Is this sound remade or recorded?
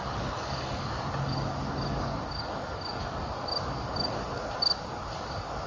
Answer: recorded